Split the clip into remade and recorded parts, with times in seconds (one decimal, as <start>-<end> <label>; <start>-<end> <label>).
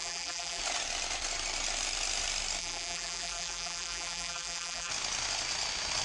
0.0-0.6 remade; 0.6-2.6 recorded; 2.6-4.9 remade; 4.9-6.0 recorded